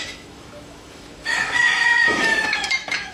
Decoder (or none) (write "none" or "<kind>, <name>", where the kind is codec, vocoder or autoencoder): autoencoder, DAC-VAE